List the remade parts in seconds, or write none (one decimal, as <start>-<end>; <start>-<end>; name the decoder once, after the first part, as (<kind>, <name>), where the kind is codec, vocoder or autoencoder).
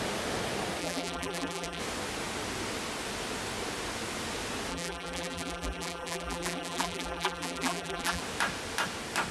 0.8-1.8 (vocoder, BigVGAN v2); 4.7-8.2